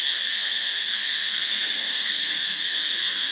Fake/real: fake